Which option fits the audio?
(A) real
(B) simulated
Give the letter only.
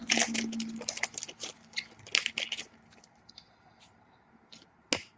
A